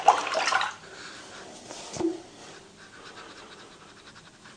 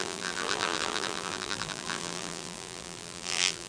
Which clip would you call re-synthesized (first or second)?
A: second